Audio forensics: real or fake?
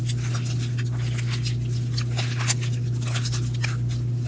real